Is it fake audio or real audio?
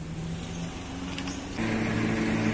real